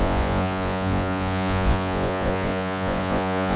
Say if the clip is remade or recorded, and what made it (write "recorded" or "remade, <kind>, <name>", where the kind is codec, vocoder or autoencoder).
remade, vocoder, Vocos